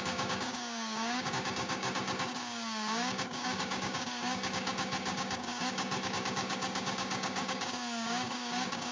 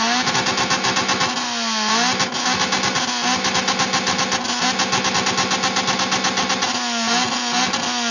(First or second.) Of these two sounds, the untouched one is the second